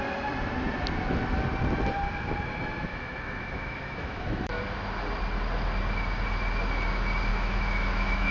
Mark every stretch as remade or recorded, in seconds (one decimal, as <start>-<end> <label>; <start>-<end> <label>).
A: 0.0-2.9 recorded; 2.9-4.6 remade; 4.6-7.3 recorded; 7.3-8.3 remade